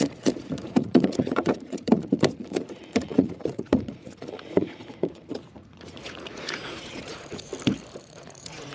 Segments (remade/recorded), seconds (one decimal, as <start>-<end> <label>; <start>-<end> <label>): 0.0-7.5 remade; 7.5-8.0 recorded; 8.0-8.7 remade